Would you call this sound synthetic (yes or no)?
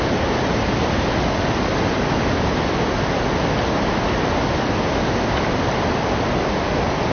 no